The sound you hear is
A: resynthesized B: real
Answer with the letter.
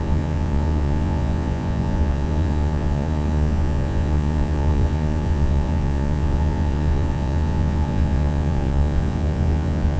A